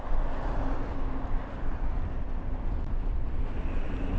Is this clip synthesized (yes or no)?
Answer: no